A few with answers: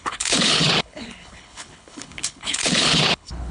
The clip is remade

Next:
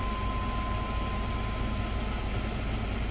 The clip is recorded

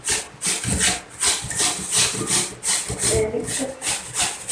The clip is recorded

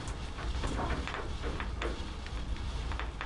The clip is recorded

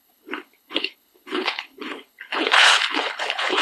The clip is remade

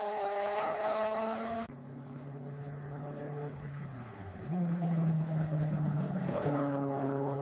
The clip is remade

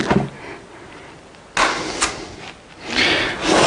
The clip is recorded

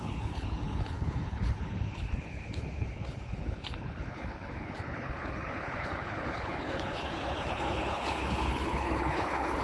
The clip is remade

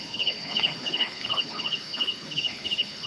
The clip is remade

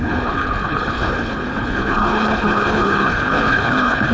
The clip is remade